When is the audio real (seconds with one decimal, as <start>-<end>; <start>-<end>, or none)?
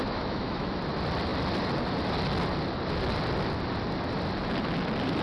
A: 0.8-5.2